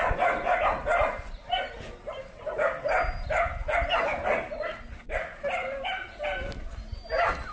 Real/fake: real